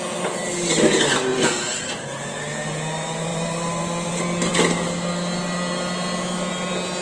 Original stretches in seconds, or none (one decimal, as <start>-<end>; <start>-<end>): 0.0-1.3; 1.9-3.3; 4.1-7.0